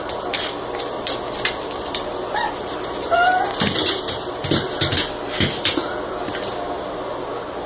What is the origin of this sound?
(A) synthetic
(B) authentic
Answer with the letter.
B